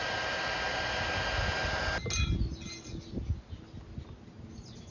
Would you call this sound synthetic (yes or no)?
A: no